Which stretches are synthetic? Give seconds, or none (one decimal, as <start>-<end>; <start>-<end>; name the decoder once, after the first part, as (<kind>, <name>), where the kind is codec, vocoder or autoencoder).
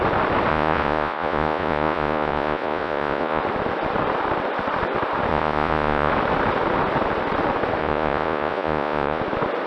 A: 0.5-3.4 (vocoder, Vocos); 5.3-6.1; 7.8-9.2